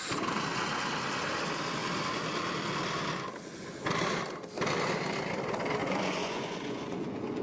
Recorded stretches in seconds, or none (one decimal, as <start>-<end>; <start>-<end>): 0.0-5.8